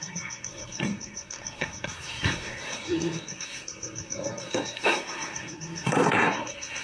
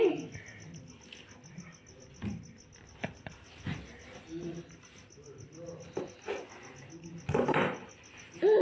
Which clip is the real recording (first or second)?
second